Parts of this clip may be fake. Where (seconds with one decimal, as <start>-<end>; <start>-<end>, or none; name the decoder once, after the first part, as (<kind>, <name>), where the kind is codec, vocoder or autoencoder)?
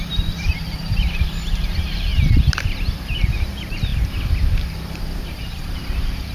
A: 0.0-3.9 (vocoder, BigVGAN v2); 5.2-6.3